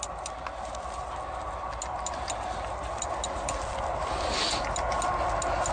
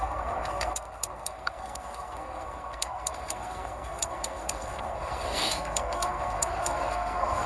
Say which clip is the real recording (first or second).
first